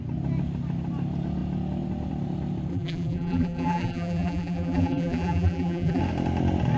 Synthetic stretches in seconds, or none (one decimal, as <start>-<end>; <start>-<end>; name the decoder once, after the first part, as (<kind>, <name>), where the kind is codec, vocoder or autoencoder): 2.7-6.0 (vocoder, BigVGAN v2)